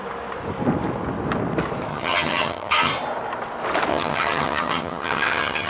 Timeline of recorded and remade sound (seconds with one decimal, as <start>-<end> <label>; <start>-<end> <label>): 0.0-1.9 recorded; 1.9-2.9 remade; 2.9-3.9 recorded; 3.9-5.7 remade